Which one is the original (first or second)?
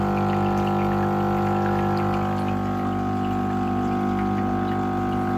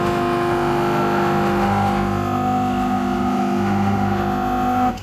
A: first